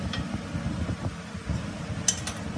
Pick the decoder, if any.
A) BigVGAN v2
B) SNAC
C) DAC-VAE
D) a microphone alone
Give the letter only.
D